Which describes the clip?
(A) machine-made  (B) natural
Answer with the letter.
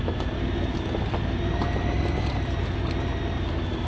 B